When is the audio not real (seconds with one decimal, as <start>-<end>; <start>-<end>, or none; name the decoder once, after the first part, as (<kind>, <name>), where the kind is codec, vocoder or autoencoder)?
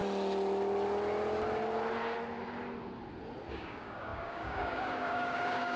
3.5-5.8 (codec, DAC)